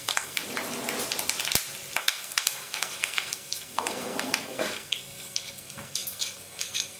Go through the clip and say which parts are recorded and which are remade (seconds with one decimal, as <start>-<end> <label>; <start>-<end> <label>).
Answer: 0.0-0.4 remade; 0.4-2.0 recorded; 2.0-7.0 remade